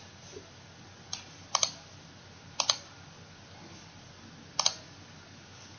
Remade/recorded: recorded